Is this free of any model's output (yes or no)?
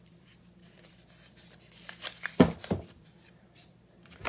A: no